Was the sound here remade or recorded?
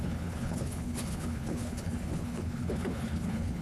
remade